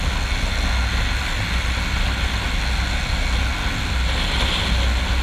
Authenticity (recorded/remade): recorded